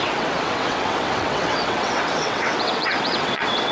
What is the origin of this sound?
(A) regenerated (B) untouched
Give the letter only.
A